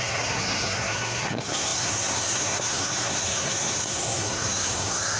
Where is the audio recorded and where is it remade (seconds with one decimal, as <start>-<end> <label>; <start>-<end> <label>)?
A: 0.0-5.2 remade

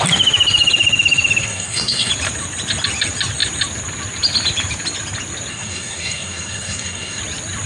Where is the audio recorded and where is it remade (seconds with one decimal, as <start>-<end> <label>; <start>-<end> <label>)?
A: 0.0-1.4 recorded; 1.4-2.1 remade; 2.1-5.5 recorded; 5.5-7.2 remade; 7.2-7.7 recorded

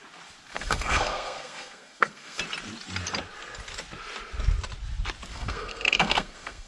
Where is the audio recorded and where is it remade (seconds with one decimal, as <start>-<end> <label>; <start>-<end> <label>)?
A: 0.0-0.5 recorded; 0.5-2.4 remade; 2.4-5.3 recorded; 5.3-6.7 remade

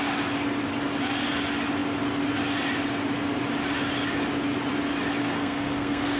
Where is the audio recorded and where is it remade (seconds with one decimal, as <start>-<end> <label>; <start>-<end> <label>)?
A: 0.0-5.2 recorded; 5.2-6.2 remade

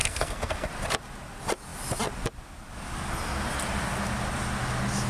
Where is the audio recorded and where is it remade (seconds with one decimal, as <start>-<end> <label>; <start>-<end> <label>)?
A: 0.0-0.7 remade; 0.7-5.1 recorded

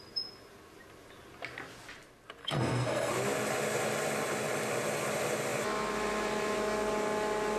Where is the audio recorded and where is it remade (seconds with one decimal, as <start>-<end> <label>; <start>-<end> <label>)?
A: 0.0-2.4 recorded; 2.4-3.1 remade; 3.1-7.6 recorded